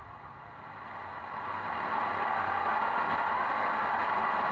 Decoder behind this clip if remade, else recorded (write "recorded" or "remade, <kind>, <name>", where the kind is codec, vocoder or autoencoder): recorded